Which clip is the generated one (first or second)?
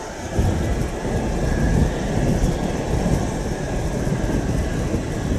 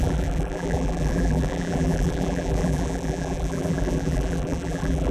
second